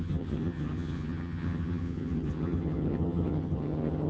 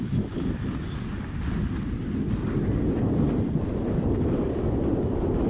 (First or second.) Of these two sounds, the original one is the second